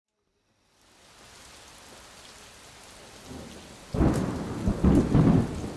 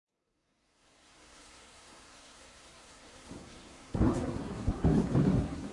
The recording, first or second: first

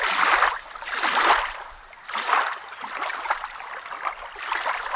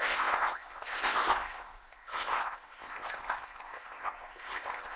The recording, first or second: first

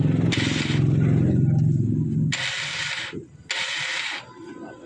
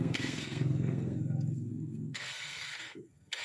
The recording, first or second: first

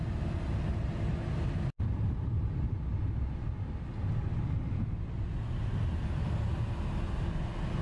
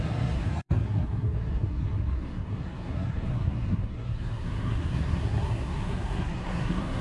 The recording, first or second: first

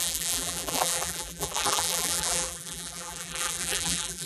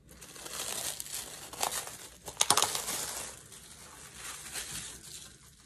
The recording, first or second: second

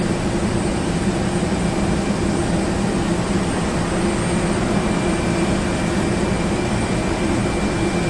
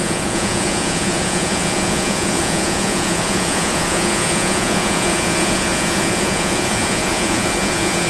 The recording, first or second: first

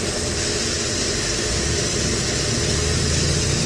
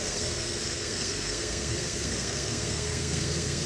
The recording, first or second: first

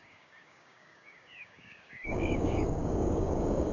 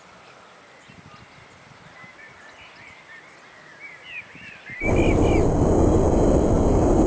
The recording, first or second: second